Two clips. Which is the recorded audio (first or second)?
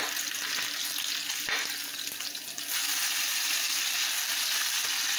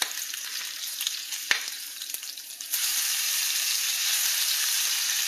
first